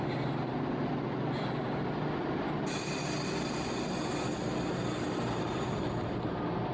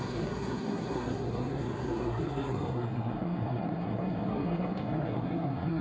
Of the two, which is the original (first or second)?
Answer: first